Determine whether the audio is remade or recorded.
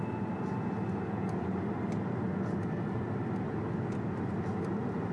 recorded